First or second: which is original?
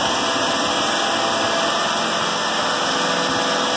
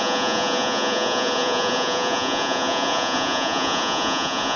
first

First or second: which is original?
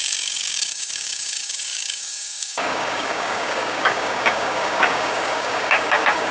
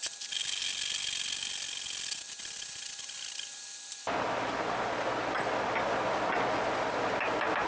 second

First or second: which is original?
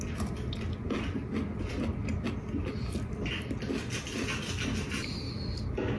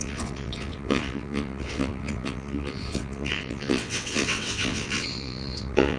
first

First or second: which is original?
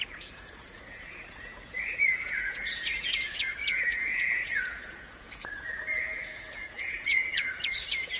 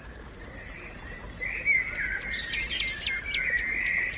second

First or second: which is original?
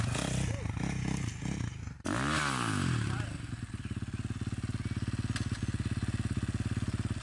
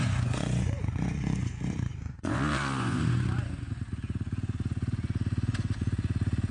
first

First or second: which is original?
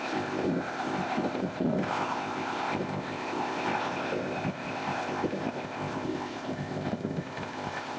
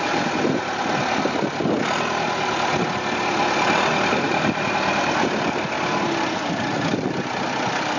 second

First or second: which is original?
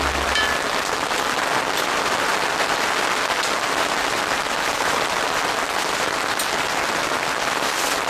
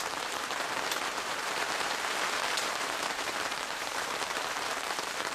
first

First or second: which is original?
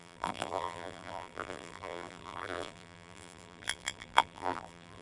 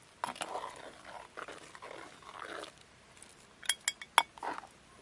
second